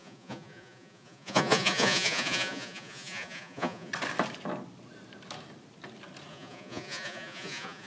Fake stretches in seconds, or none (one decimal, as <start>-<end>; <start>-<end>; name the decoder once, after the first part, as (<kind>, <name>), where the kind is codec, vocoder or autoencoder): 0.0-3.9 (vocoder, Vocos); 6.3-7.9